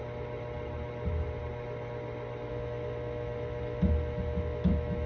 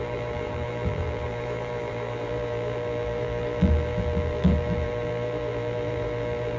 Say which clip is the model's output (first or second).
second